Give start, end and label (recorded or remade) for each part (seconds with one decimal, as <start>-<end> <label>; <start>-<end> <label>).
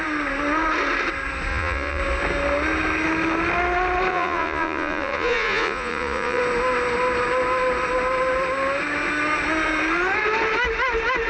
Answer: 0.0-1.5 recorded; 1.5-2.0 remade; 2.0-4.1 recorded; 4.1-6.4 remade; 6.4-11.3 recorded